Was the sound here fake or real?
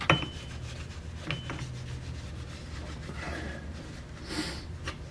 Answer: real